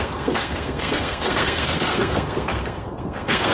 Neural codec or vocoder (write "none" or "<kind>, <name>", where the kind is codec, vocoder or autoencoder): codec, SNAC